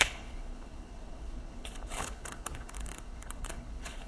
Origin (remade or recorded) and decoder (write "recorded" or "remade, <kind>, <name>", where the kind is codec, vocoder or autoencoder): remade, codec, HILCodec